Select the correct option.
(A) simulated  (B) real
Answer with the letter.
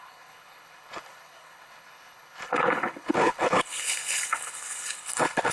A